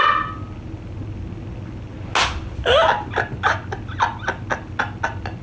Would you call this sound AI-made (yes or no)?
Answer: no